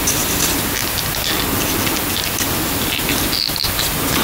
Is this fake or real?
real